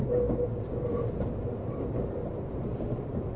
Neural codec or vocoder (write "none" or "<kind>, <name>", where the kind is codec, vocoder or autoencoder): none